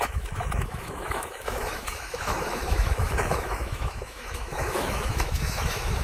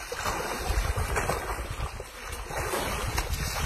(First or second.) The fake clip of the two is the first